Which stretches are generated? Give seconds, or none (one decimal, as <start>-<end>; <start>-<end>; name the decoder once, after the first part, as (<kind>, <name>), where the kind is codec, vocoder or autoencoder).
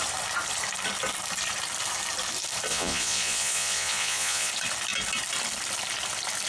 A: 2.7-4.5 (vocoder, Vocos)